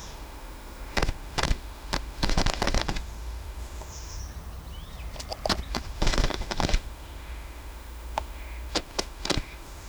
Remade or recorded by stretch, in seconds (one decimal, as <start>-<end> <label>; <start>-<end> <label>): 0.0-4.2 remade; 4.2-5.7 recorded; 5.7-9.9 remade